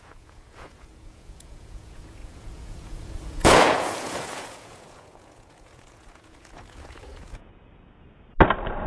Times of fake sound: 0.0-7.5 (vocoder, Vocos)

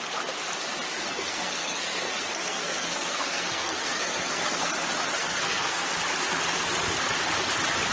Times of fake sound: 1.0-4.7 (codec, SNAC); 5.2-5.9